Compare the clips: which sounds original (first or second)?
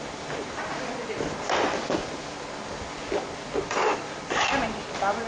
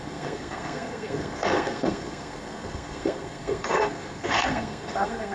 first